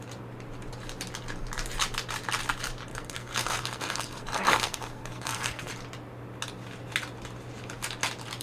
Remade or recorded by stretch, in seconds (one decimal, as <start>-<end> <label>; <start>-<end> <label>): 0.0-2.9 recorded; 2.9-5.7 remade; 5.7-8.4 recorded